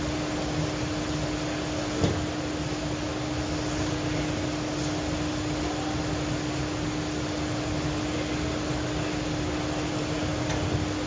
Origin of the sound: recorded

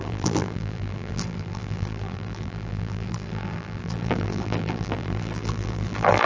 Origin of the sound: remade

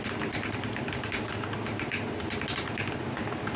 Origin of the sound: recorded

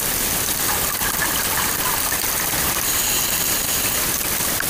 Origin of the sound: recorded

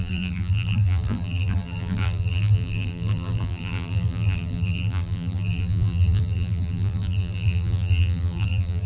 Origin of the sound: remade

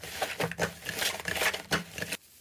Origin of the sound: recorded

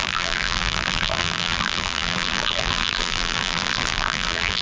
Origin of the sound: remade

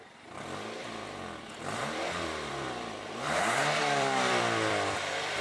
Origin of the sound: remade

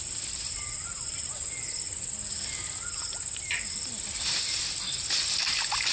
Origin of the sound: recorded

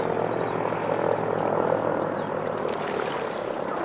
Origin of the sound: recorded